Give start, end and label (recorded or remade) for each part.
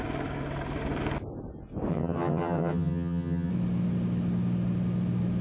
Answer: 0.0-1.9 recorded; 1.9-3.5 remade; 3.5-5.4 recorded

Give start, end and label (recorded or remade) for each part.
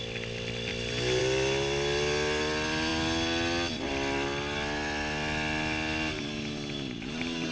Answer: 0.0-7.5 recorded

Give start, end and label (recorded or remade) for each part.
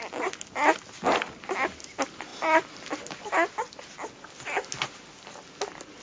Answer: 0.0-6.0 recorded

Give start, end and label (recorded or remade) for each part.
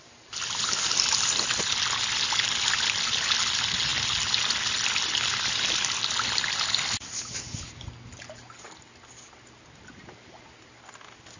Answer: 0.0-11.4 recorded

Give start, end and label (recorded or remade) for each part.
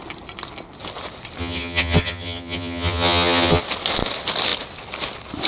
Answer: 0.0-1.4 recorded; 1.4-3.6 remade; 3.6-5.5 recorded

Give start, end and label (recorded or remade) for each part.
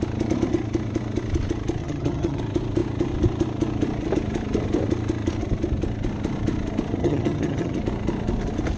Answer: 0.0-1.8 recorded; 1.8-2.4 remade; 2.4-7.0 recorded; 7.0-7.8 remade; 7.8-8.8 recorded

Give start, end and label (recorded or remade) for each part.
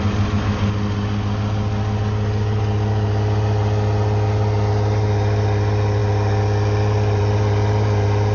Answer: 0.0-8.3 recorded